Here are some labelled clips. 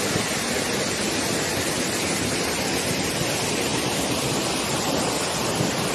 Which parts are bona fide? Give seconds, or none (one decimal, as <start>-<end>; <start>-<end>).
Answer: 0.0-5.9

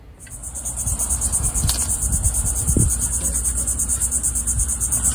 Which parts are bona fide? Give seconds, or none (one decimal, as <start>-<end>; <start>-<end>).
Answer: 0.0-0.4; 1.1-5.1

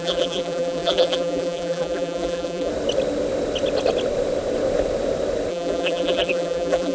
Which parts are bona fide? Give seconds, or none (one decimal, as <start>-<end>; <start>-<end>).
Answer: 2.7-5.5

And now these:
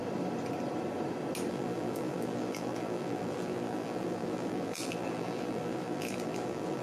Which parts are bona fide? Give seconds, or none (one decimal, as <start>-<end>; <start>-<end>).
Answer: 0.0-1.5